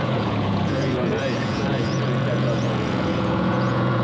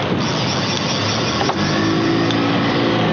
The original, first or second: second